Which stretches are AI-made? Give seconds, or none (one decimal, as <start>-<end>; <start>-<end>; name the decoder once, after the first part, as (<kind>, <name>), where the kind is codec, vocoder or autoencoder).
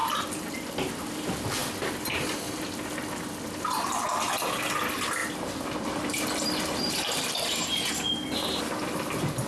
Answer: 0.0-0.9 (vocoder, BigVGAN v2); 1.6-2.9; 5.2-7.9